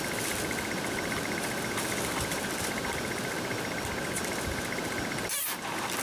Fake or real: real